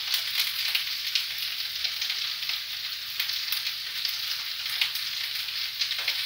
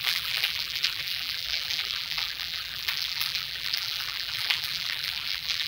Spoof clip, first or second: second